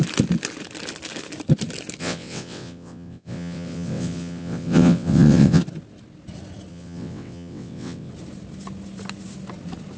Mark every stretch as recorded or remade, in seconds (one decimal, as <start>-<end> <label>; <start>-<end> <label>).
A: 0.0-2.0 recorded; 2.0-5.6 remade; 5.6-6.7 recorded; 6.7-8.1 remade; 8.1-10.0 recorded